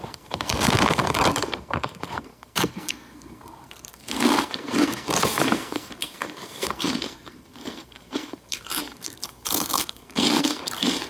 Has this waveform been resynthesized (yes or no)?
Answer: yes